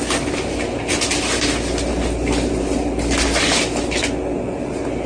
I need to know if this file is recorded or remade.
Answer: recorded